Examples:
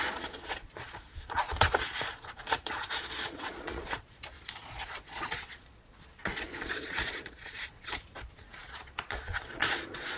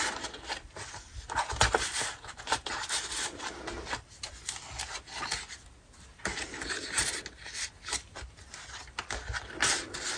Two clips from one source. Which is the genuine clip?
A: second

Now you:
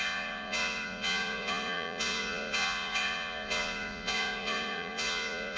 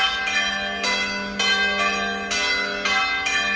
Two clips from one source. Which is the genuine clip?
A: second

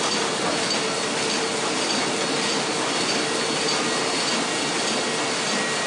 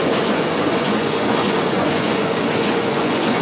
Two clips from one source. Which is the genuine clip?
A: first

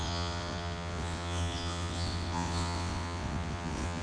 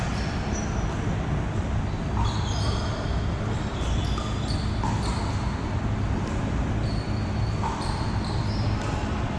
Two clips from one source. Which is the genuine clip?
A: second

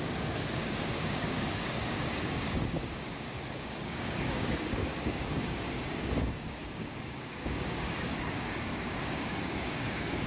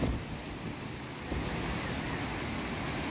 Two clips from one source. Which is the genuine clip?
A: second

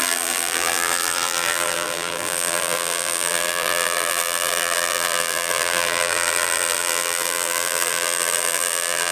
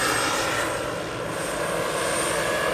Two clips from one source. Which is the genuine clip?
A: second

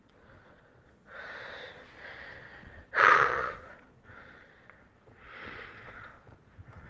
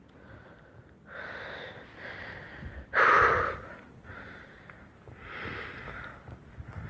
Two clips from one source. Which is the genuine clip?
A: second